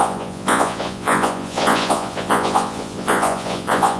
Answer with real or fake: fake